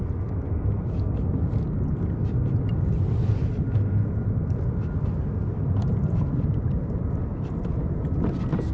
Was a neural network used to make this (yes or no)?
no